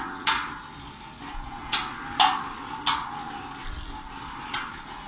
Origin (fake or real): real